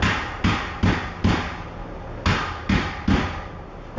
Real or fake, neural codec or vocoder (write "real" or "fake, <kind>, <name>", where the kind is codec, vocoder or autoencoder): real